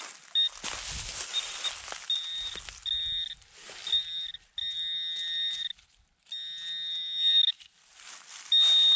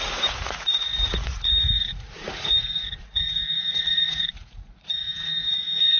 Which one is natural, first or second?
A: first